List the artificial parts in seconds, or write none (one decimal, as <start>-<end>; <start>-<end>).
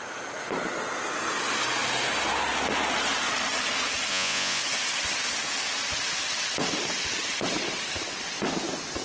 4.1-4.6